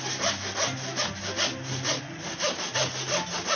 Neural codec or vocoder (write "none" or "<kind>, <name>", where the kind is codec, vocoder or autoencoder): none